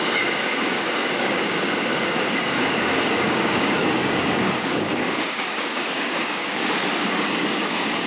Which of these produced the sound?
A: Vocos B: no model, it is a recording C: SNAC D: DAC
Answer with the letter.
D